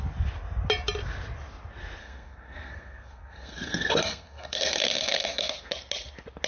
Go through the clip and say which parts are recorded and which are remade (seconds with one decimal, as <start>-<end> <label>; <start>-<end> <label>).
0.0-2.0 recorded; 2.0-5.7 remade; 5.7-6.5 recorded